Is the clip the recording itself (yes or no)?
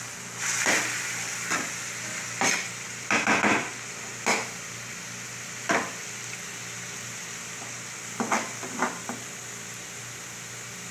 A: no